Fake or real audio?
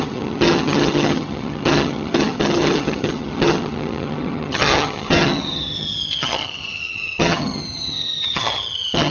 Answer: fake